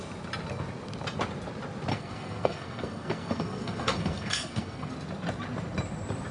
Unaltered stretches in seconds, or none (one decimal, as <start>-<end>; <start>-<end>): 0.0-1.9; 4.9-6.3